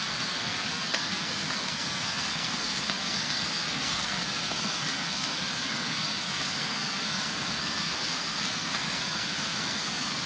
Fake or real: fake